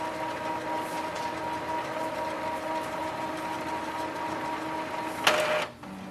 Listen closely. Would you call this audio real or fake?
real